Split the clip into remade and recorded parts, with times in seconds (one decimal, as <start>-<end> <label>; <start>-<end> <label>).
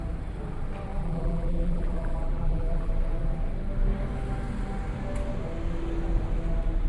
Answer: 0.0-0.9 recorded; 0.9-2.9 remade; 2.9-6.9 recorded